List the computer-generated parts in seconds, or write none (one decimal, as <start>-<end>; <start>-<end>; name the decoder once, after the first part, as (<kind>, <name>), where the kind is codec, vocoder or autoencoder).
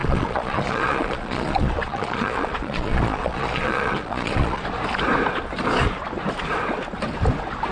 0.0-4.6 (vocoder, Vocos)